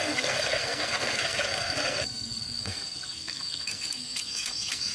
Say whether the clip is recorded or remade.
remade